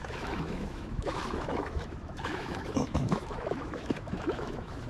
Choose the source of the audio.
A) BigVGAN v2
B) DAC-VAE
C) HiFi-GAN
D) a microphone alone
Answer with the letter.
B